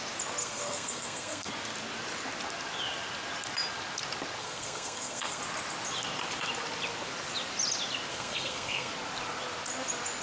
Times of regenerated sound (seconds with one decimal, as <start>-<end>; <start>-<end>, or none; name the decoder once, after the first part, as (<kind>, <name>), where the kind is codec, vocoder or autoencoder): 0.4-1.5 (codec, SNAC); 4.4-5.4; 8.1-8.9